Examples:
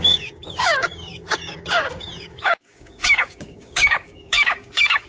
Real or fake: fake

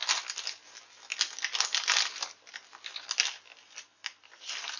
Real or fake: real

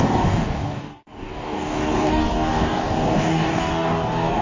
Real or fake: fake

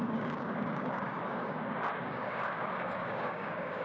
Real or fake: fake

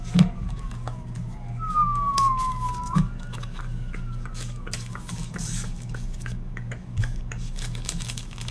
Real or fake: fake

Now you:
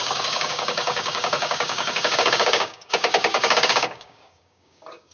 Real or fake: fake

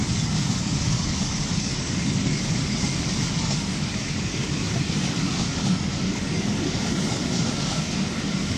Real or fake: fake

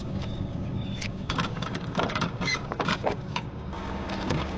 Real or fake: fake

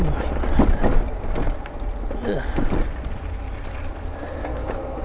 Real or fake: real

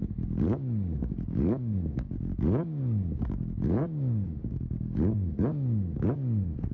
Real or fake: fake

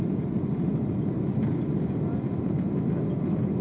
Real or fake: real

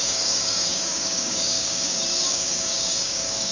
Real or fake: fake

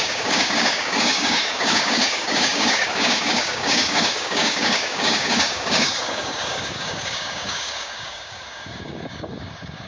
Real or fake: fake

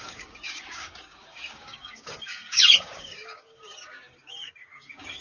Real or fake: fake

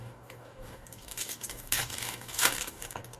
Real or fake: fake